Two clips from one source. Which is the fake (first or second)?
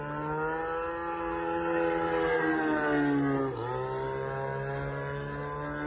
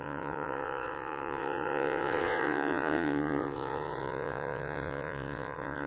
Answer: second